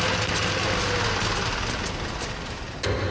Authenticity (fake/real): real